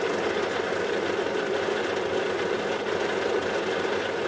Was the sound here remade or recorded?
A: recorded